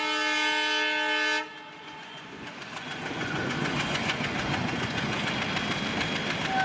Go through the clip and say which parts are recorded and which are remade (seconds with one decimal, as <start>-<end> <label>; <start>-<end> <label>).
0.0-1.8 recorded; 1.8-5.3 remade; 5.3-6.6 recorded